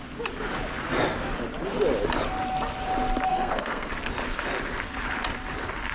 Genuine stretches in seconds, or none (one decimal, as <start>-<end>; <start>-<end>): 0.0-3.3; 3.9-5.9

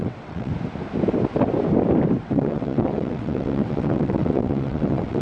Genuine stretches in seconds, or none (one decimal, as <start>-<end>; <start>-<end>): 0.5-2.2

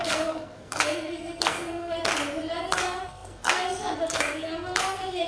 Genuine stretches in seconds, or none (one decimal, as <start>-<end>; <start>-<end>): 2.1-2.6

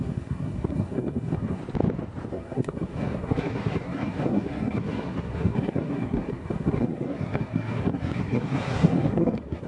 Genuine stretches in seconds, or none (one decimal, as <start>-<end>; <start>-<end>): 1.6-2.3

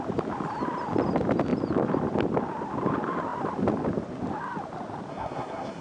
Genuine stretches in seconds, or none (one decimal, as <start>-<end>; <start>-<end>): 0.0-5.1

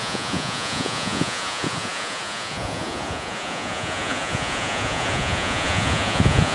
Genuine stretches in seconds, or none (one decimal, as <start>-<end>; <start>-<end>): none

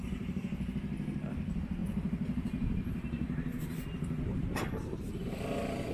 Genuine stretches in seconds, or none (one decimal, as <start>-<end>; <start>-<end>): 0.7-1.8; 5.3-5.9